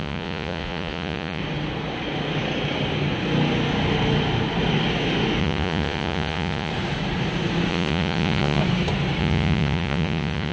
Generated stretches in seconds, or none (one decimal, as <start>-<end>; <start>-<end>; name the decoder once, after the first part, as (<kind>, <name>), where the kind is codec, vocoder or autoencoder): 0.0-1.4 (vocoder, Vocos); 5.4-6.7; 7.7-8.6; 9.2-10.5